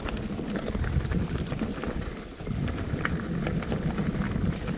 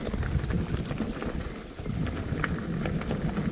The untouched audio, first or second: second